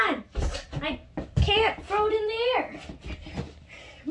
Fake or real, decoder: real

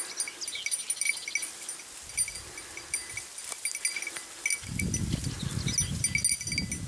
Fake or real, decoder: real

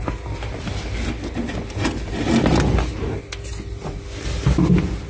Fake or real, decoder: real